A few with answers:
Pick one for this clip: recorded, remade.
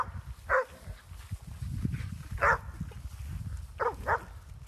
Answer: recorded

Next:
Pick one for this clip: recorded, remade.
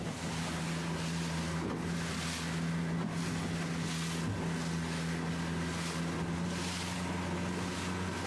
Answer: recorded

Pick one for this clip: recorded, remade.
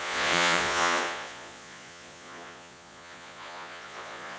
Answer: remade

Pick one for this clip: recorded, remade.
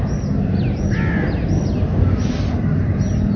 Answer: recorded